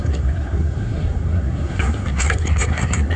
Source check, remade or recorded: remade